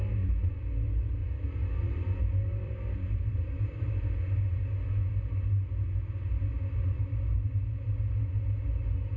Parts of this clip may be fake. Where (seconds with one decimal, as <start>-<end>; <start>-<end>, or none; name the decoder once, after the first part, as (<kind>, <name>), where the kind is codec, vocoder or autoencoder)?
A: 1.2-4.1 (vocoder, BigVGAN v2)